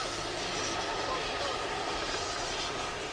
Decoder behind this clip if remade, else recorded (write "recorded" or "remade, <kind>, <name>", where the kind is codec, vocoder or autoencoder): recorded